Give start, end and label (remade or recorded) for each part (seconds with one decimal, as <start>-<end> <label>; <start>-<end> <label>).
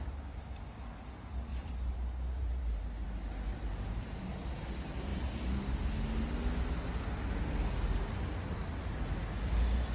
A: 0.0-1.5 recorded; 1.5-2.8 remade; 2.8-3.5 recorded; 3.5-4.3 remade; 4.3-9.9 recorded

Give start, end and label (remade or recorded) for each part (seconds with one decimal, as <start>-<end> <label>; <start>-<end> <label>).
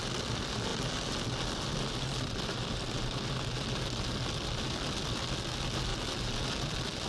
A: 0.0-7.1 recorded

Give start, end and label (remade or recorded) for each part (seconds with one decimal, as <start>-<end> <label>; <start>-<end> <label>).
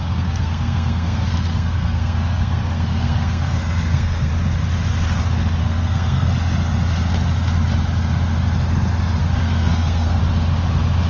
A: 0.0-4.3 remade; 4.3-5.6 recorded; 5.6-6.3 remade; 6.3-9.2 recorded; 9.2-10.2 remade; 10.2-11.1 recorded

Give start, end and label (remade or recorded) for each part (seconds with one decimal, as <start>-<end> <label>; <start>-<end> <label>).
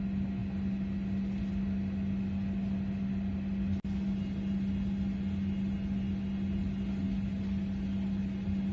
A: 0.0-8.7 recorded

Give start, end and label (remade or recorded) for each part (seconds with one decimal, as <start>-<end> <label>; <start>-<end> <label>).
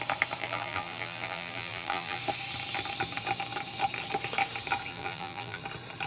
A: 0.0-0.4 recorded; 0.4-2.2 remade; 2.2-4.9 recorded; 4.9-5.6 remade; 5.6-6.1 recorded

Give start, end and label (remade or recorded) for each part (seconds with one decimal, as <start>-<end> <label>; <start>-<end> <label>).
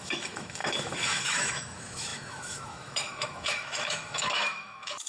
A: 0.0-5.1 remade